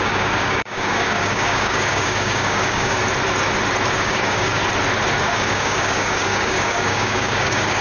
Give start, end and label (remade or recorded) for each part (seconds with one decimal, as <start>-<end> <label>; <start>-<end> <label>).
0.0-3.0 remade; 3.0-3.9 recorded; 3.9-4.6 remade; 4.6-5.2 recorded; 5.2-7.8 remade